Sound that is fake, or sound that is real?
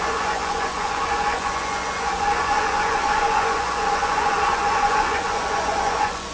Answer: fake